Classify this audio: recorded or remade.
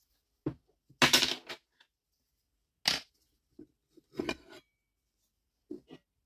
recorded